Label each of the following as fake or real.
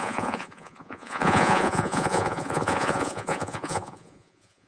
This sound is fake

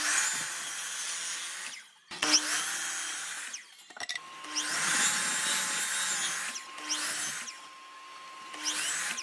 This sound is real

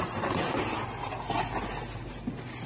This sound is real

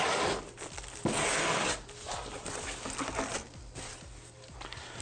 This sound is real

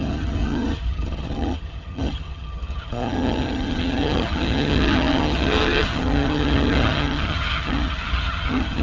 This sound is fake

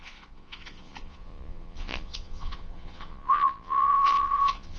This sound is fake